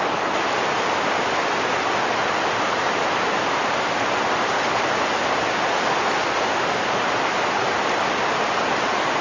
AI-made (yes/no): no